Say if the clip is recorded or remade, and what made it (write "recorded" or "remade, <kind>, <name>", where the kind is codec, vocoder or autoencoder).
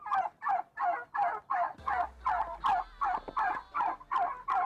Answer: recorded